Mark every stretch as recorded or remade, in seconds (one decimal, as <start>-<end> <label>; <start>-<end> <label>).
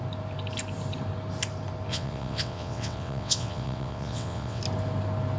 0.0-1.9 recorded; 1.9-4.6 remade; 4.6-5.4 recorded